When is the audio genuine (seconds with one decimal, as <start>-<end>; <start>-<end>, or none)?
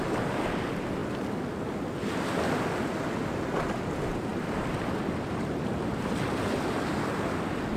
0.0-7.8